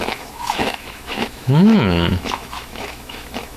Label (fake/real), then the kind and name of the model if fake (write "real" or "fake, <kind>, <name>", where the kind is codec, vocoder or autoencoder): fake, autoencoder, DAC-VAE